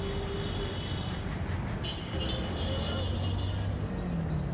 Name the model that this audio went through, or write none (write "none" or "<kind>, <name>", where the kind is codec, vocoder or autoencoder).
none